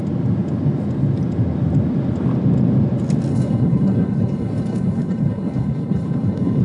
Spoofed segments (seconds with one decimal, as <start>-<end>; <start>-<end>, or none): 3.3-6.6